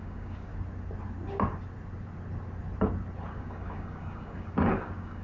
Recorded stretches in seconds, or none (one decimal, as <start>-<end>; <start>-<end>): 0.5-3.3